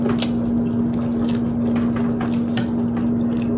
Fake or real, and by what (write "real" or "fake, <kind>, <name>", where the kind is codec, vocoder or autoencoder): real